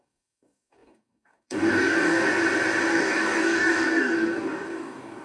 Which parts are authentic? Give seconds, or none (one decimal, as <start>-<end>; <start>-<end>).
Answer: 2.3-2.9